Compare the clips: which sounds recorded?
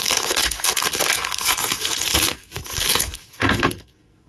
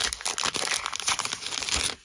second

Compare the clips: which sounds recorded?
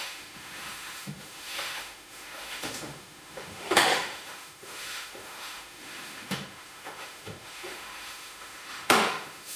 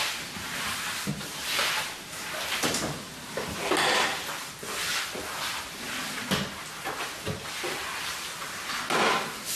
second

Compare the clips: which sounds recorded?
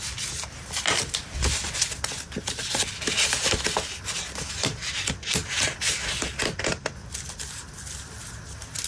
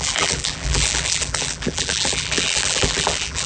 first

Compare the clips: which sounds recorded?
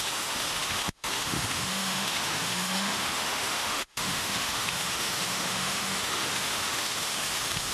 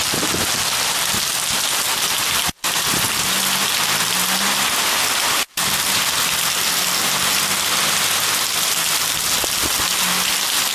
second